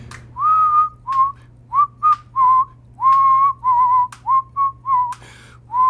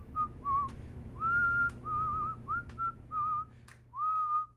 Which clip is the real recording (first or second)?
first